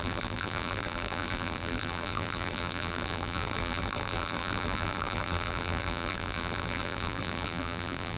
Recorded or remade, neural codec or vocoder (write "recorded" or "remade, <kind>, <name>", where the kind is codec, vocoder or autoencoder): remade, vocoder, BigVGAN v2